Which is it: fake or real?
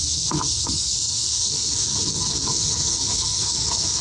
fake